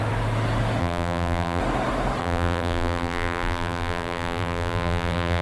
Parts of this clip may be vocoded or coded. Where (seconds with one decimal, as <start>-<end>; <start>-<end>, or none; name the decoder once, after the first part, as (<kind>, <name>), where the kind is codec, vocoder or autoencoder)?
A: 0.8-1.6 (vocoder, BigVGAN v2); 2.2-5.4